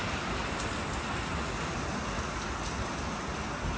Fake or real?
real